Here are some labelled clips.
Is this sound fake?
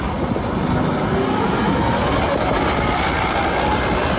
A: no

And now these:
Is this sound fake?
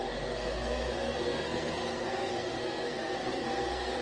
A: yes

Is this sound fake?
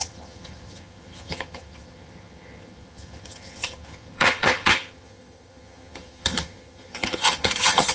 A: yes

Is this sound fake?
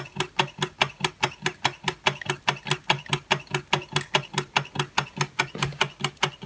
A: no